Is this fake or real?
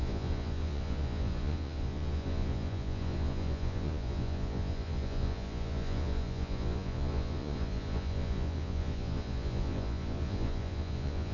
fake